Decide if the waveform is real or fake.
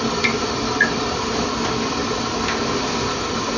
real